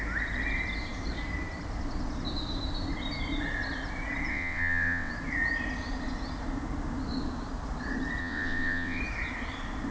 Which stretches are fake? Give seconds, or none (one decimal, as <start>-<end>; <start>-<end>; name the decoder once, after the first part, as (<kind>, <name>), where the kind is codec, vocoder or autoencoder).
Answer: 4.3-5.1 (vocoder, WaveNeXt); 8.2-9.0